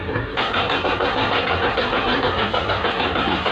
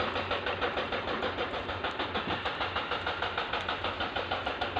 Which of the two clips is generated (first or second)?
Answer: first